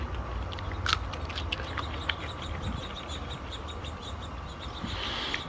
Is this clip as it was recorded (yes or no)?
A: yes